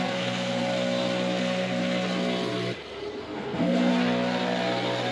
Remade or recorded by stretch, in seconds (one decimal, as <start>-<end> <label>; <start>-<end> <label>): 0.0-0.6 remade; 0.6-1.4 recorded; 1.4-1.8 remade; 1.8-3.2 recorded; 3.2-3.9 remade; 3.9-5.1 recorded